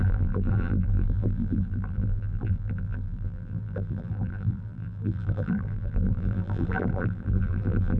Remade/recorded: remade